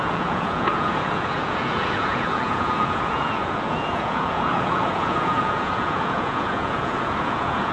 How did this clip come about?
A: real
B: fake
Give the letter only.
B